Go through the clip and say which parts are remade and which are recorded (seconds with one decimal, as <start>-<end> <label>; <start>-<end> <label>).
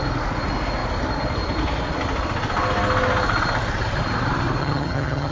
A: 0.0-4.6 recorded; 4.6-5.3 remade